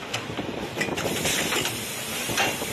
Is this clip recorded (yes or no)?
yes